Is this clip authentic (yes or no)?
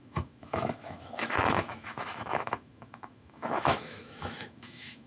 no